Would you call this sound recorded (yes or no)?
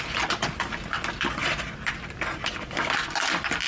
yes